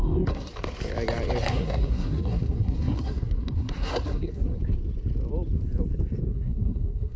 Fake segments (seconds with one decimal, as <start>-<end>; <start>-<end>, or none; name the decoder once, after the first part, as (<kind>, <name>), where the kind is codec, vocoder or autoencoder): 0.0-0.5 (codec, SNAC); 1.5-4.6; 6.3-7.2